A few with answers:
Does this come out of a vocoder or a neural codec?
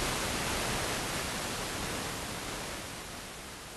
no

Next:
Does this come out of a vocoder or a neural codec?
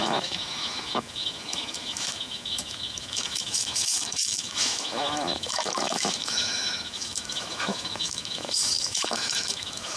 yes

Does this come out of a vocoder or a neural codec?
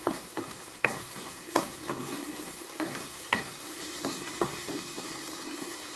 yes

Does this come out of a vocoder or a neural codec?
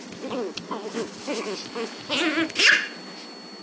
no